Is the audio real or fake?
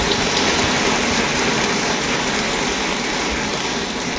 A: real